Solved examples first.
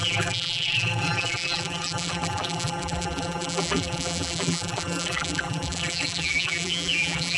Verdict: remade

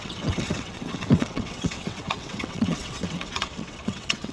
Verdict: remade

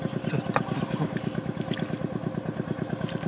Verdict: recorded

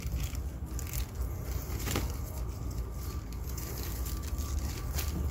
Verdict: recorded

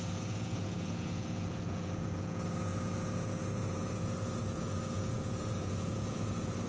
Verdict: remade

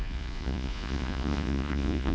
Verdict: remade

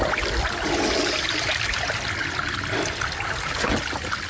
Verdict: recorded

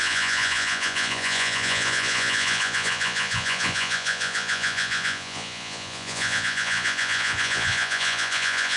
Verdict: remade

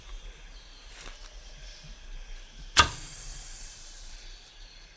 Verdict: remade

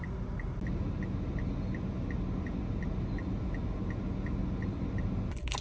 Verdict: recorded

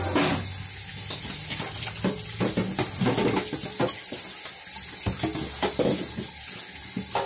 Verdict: recorded